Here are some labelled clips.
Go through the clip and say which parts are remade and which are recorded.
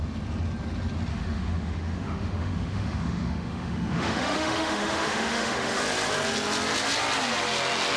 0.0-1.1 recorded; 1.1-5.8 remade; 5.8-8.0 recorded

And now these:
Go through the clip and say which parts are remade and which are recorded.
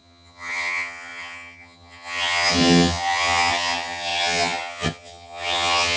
0.0-6.0 remade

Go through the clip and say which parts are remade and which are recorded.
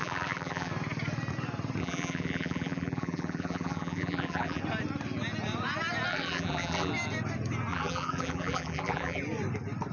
0.0-0.7 remade; 0.7-1.8 recorded; 1.8-4.6 remade; 4.6-6.1 recorded; 6.1-6.9 remade; 6.9-7.7 recorded; 7.7-9.2 remade; 9.2-9.9 recorded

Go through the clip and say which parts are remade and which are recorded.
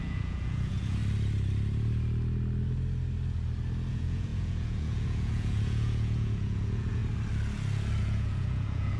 0.0-1.0 remade; 1.0-3.9 recorded; 3.9-7.0 remade; 7.0-8.0 recorded; 8.0-9.0 remade